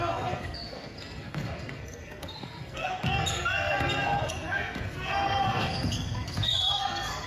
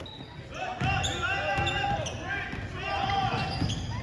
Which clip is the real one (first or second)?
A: second